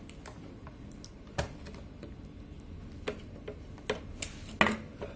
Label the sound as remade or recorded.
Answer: recorded